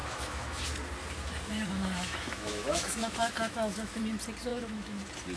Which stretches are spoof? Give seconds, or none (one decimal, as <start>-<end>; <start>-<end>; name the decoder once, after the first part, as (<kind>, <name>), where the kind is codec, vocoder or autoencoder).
0.0-0.6 (autoencoder, DAC-VAE); 1.5-4.0; 4.5-5.0